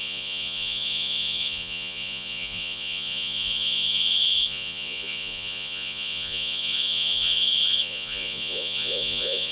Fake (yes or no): yes